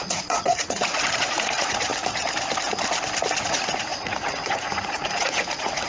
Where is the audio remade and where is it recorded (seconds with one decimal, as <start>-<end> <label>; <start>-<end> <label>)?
0.0-1.9 remade; 1.9-3.4 recorded; 3.4-5.9 remade